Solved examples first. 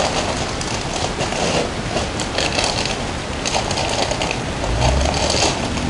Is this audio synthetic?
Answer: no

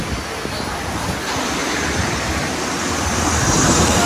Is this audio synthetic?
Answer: no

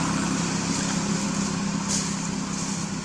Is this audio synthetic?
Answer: no